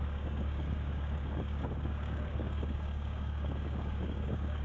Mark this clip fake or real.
fake